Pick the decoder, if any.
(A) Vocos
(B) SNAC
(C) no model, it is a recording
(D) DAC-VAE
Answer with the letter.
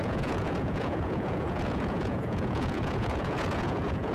A